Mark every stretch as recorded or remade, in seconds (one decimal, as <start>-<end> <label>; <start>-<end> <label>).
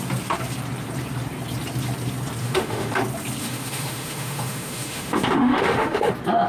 0.0-2.4 recorded; 2.4-2.9 remade; 2.9-3.4 recorded; 3.4-6.1 remade; 6.1-6.5 recorded